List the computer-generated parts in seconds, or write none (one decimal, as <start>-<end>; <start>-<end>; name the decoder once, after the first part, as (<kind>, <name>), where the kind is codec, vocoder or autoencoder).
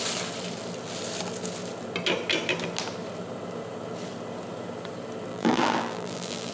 5.3-6.5 (vocoder, BigVGAN v2)